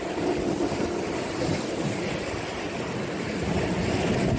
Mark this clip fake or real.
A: real